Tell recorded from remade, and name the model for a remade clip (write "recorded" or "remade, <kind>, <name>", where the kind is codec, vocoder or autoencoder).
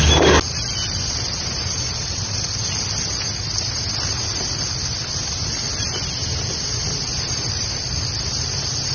recorded